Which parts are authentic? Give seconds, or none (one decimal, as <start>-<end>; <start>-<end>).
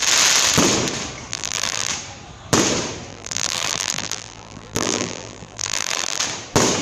0.0-1.3; 1.9-3.1; 6.2-6.8